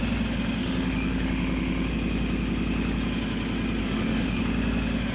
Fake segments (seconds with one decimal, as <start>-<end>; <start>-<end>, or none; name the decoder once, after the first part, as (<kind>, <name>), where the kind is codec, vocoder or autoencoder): 0.6-1.9 (autoencoder, DAC-VAE); 3.8-4.4